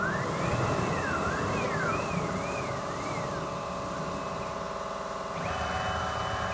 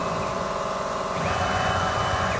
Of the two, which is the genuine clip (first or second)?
first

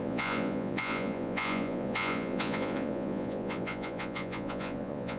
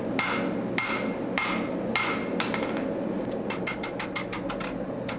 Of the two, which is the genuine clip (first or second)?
second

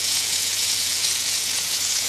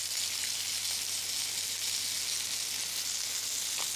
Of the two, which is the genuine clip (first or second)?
second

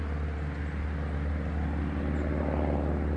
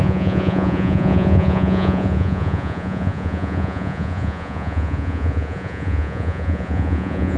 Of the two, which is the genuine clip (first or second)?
first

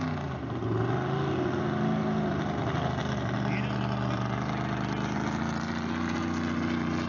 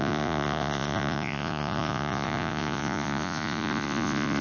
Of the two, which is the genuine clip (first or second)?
first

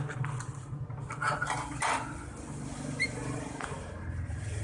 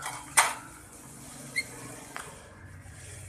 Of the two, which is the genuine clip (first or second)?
first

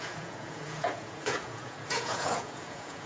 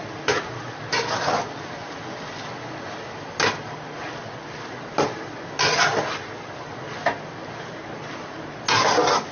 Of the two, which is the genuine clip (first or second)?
second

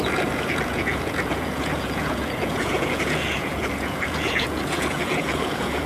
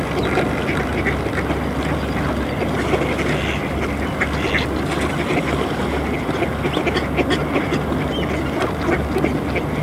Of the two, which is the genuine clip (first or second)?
second